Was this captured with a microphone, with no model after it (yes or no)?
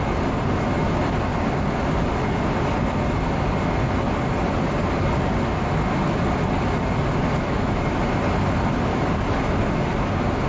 yes